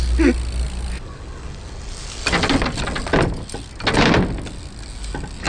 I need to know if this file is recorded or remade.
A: recorded